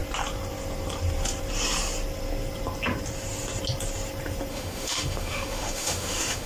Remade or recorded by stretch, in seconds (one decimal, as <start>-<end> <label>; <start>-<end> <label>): 0.0-4.5 recorded; 4.5-6.5 remade